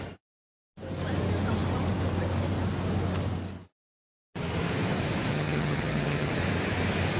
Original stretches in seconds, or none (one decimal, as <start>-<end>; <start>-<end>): 0.0-5.3; 6.3-7.2